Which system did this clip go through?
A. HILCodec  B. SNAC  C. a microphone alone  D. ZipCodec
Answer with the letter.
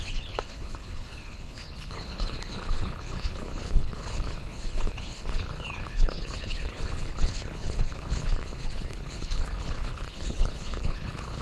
A